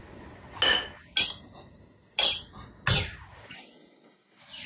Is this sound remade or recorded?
recorded